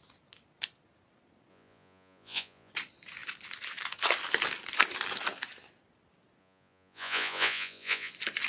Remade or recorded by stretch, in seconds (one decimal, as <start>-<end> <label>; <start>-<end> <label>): 0.0-1.5 recorded; 1.5-2.7 remade; 2.7-6.4 recorded; 6.4-8.1 remade; 8.1-8.5 recorded